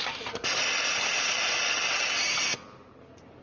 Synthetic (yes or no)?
no